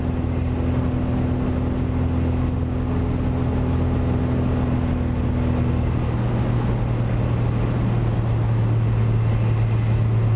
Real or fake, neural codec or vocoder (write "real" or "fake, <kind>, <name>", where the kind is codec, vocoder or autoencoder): real